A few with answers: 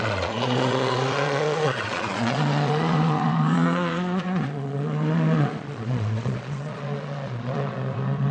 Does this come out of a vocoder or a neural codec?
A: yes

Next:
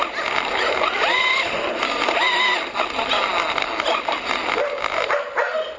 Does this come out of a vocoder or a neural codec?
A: no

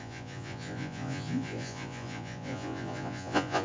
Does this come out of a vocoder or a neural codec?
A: yes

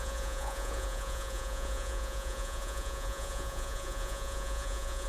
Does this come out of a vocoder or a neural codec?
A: yes